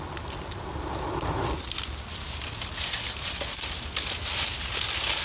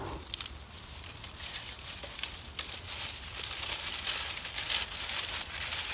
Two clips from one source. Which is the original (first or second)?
first